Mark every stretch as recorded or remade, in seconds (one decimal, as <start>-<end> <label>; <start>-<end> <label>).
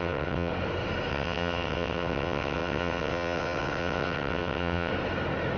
0.0-0.5 remade; 0.5-1.1 recorded; 1.1-4.9 remade; 4.9-5.6 recorded